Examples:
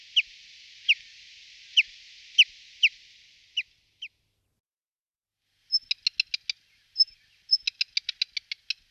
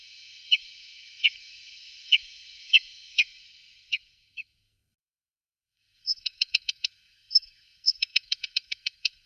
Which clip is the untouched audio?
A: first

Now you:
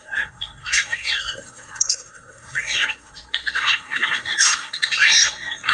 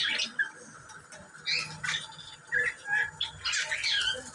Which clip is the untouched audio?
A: second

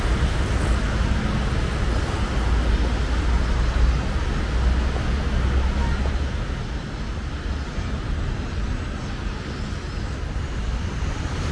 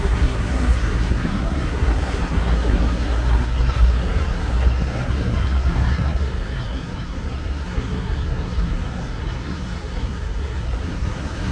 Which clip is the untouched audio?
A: first